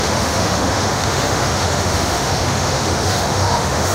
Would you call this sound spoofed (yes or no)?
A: yes